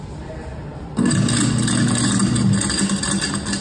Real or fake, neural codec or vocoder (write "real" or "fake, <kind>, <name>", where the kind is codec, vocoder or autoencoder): real